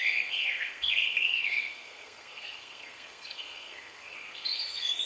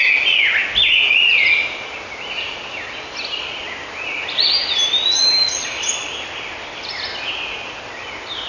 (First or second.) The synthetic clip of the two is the first